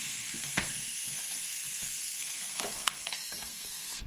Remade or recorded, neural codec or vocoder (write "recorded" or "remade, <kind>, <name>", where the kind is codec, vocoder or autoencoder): remade, codec, SNAC